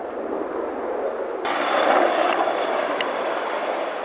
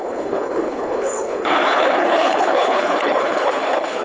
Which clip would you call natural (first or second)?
first